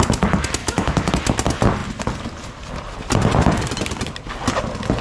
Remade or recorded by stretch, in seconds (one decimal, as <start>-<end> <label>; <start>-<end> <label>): 0.0-0.6 recorded; 0.6-1.1 remade; 1.1-5.0 recorded